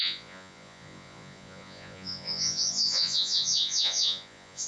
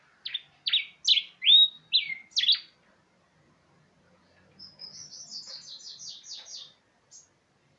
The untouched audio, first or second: second